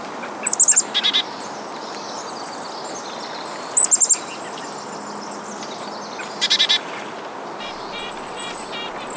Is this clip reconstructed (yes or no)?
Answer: no